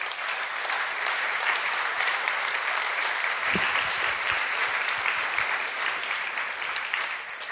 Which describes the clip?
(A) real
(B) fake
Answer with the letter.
B